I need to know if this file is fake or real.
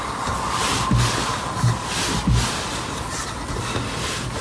real